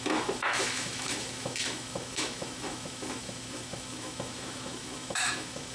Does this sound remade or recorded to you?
remade